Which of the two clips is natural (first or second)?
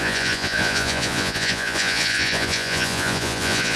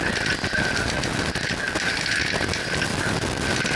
second